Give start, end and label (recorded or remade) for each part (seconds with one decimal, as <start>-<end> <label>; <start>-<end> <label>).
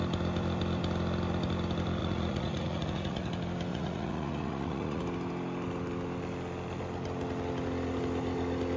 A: 0.0-2.0 recorded; 2.0-3.3 remade; 3.3-3.7 recorded; 3.7-5.0 remade; 5.0-8.8 recorded